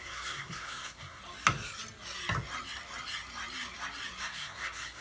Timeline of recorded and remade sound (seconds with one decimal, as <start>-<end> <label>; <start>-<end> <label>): 0.0-1.2 remade; 1.2-4.2 recorded; 4.2-5.0 remade